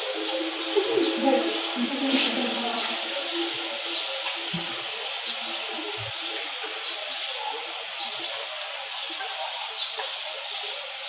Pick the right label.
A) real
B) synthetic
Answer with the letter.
A